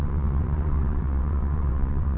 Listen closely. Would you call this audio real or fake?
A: fake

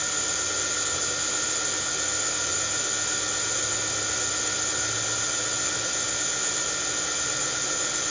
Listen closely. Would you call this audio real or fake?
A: real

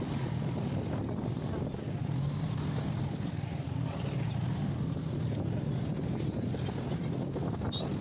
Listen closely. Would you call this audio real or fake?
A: real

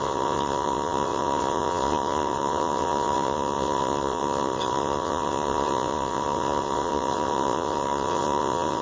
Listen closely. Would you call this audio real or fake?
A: fake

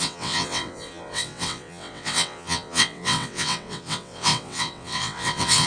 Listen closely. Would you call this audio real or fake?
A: fake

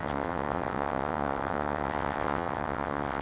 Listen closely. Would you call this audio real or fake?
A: fake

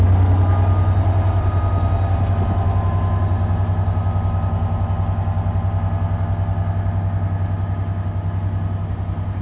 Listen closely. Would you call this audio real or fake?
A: real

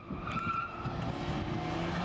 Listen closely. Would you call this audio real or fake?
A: real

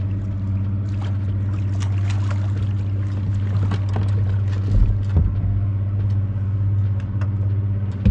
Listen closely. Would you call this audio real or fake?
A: real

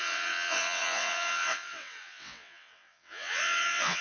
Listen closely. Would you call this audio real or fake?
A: fake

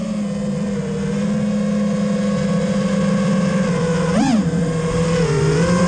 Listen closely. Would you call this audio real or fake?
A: real